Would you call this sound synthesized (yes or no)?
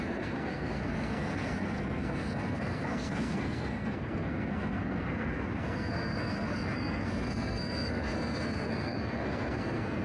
yes